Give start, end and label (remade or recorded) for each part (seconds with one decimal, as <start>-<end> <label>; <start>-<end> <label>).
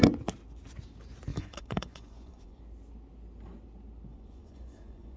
0.0-1.3 recorded; 1.3-2.6 remade; 2.6-4.1 recorded; 4.1-5.2 remade